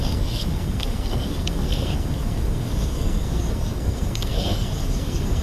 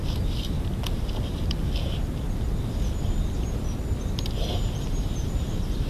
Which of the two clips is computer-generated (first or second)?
first